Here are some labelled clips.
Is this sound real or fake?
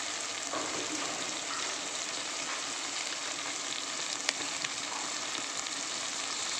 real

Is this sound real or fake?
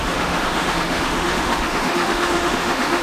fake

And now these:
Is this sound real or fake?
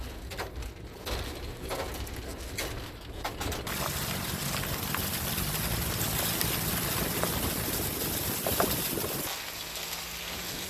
real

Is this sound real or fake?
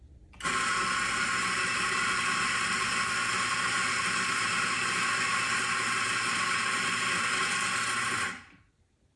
real